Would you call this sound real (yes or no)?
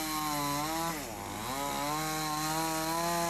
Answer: yes